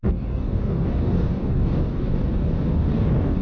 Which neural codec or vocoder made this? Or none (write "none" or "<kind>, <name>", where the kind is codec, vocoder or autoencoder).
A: codec, DAC